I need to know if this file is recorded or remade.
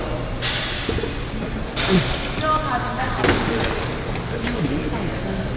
recorded